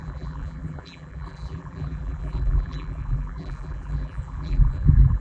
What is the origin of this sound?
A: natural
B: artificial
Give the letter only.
B